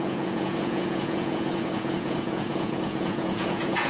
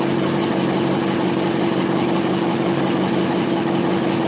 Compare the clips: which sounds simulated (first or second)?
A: first